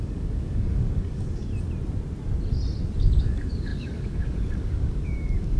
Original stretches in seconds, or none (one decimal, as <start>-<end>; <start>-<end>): 1.5-3.2